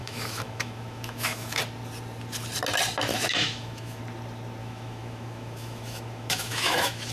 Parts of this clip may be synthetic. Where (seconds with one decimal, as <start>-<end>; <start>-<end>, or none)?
0.0-1.6; 3.1-4.0; 4.6-7.1